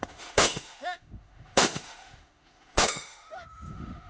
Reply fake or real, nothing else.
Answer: fake